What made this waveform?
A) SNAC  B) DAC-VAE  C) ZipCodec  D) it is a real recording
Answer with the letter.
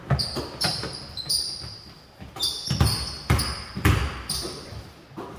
D